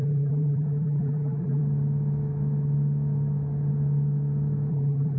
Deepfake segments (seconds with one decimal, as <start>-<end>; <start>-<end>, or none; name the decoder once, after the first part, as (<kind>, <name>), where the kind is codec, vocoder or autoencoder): 0.0-1.6 (vocoder, BigVGAN v2); 4.7-5.2